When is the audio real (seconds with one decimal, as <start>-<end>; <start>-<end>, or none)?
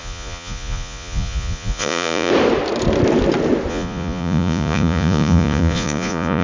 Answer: 2.3-3.7